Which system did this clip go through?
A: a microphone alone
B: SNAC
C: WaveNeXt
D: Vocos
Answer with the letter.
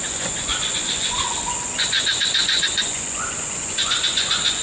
D